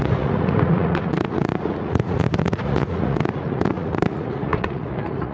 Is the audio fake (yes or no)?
yes